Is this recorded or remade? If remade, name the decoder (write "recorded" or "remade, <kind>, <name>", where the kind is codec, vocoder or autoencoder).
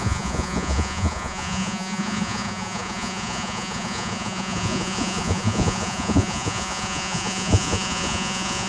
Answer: remade, vocoder, Vocos